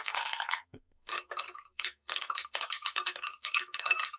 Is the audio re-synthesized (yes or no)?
yes